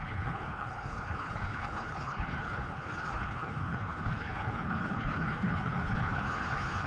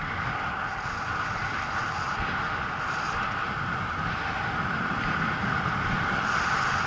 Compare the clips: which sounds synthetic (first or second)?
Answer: first